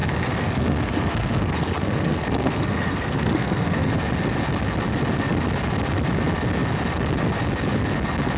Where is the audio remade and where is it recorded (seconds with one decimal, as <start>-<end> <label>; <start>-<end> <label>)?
0.0-3.9 remade; 3.9-8.4 recorded